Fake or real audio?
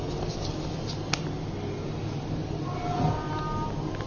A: real